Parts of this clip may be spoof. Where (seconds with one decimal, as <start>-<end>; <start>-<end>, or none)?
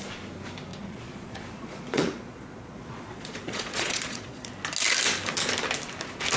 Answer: 0.7-4.5